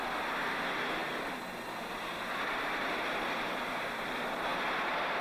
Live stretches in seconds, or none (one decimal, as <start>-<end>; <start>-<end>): 0.0-5.2